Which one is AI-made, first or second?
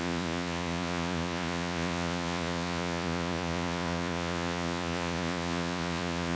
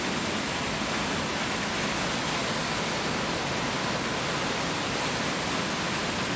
first